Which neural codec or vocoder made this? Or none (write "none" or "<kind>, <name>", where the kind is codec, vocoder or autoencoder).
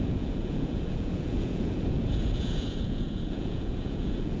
vocoder, Vocos